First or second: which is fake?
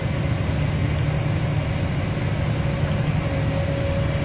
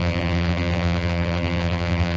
second